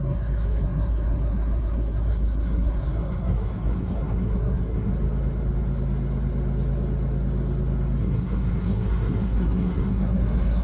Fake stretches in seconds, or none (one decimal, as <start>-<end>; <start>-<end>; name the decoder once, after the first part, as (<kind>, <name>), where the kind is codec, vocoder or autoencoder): 0.0-4.9 (codec, SNAC); 8.0-10.6